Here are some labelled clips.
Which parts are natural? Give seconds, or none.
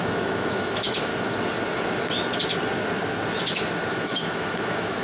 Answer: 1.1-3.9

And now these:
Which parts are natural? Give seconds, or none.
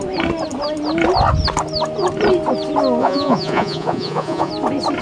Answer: 0.0-3.0; 4.5-5.0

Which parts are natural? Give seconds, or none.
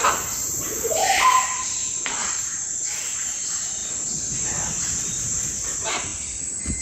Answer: 3.8-4.9; 6.1-6.8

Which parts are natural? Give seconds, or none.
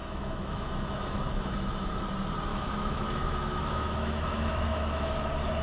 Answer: 2.1-2.5; 5.1-5.6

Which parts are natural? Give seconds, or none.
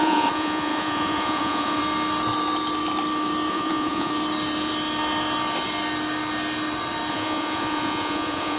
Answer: 1.8-3.5; 4.1-7.1